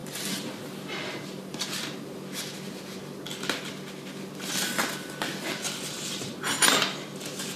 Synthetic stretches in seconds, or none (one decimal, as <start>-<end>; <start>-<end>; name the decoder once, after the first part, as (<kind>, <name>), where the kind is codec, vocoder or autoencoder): 0.0-1.8 (vocoder, BigVGAN v2)